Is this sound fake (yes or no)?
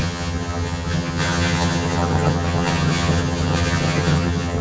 yes